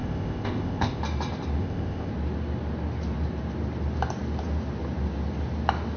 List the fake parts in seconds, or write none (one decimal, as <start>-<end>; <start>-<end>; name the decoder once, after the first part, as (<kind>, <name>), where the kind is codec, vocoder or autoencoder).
0.0-1.0 (codec, ZipCodec); 1.6-2.1